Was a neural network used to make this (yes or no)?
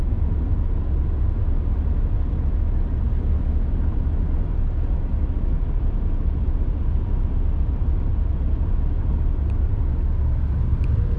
no